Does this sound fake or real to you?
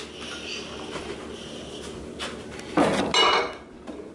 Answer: real